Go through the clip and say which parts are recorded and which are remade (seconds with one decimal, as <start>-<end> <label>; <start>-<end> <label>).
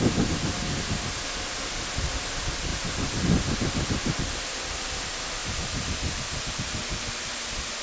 0.0-7.8 recorded